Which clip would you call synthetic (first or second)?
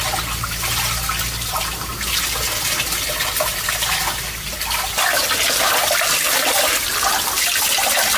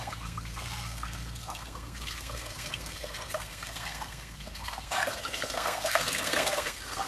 second